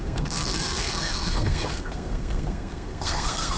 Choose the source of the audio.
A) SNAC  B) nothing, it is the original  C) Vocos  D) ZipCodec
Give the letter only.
A